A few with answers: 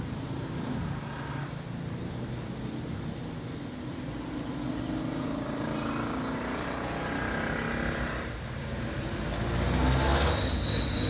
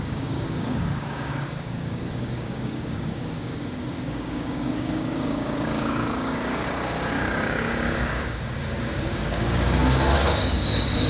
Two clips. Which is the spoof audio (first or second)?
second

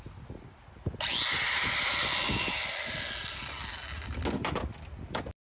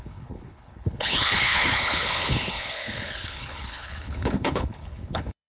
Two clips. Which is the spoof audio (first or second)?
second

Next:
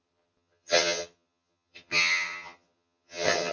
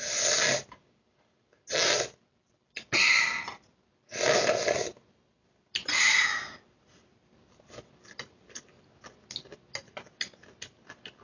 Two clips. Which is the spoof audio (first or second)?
first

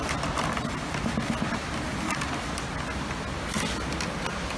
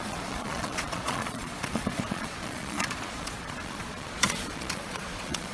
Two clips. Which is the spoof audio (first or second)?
second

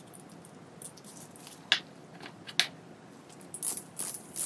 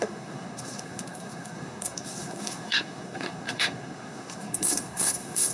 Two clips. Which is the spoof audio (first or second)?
second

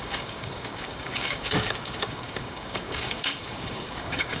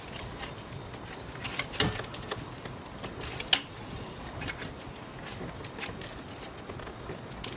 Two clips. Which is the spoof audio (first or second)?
first